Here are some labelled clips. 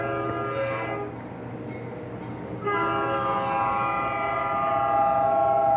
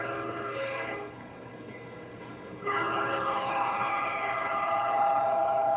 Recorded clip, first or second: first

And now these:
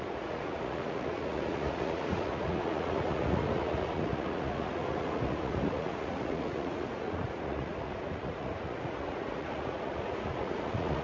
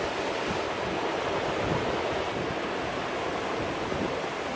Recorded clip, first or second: second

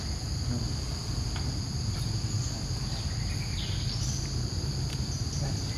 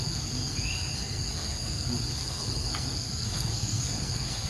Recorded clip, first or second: first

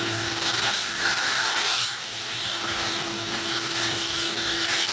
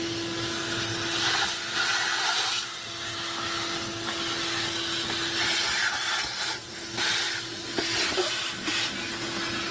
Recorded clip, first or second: second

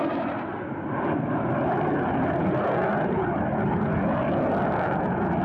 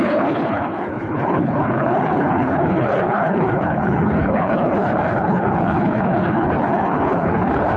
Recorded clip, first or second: first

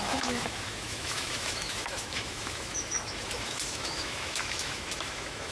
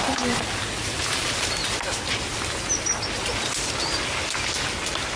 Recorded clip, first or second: second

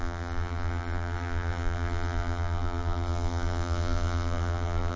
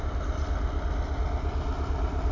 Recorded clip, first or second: second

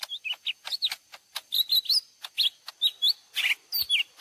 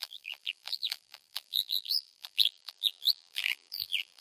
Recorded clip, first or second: first